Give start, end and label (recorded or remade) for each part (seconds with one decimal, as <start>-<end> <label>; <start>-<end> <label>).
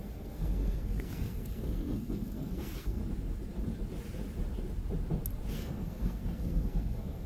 0.0-3.0 remade; 3.0-5.5 recorded; 5.5-7.3 remade